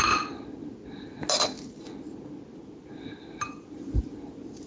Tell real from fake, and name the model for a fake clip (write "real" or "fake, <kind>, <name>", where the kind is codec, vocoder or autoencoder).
real